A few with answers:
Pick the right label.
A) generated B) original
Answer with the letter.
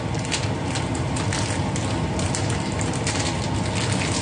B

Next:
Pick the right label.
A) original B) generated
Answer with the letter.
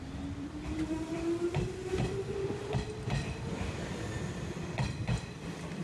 B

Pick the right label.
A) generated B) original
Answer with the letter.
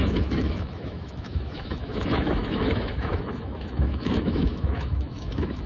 A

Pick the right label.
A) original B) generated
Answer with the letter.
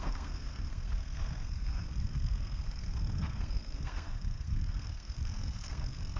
B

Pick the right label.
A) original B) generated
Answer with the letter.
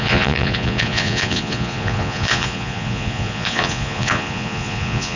B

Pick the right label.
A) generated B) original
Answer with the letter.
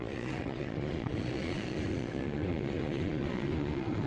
A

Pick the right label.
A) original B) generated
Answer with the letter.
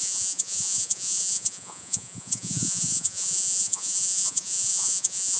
B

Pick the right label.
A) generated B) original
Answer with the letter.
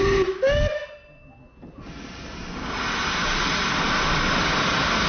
B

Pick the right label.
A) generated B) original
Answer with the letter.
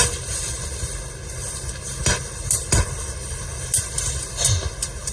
B